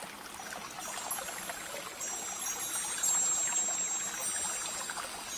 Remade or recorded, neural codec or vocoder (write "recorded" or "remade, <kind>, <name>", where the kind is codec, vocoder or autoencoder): recorded